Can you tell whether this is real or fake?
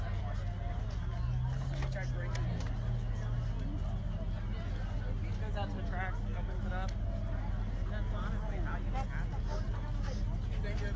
real